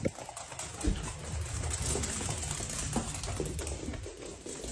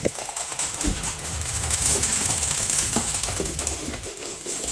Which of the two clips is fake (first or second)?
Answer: second